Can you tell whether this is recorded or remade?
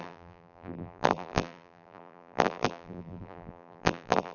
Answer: remade